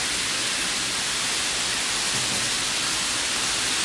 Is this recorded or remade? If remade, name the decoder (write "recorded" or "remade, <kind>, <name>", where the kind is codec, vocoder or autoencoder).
recorded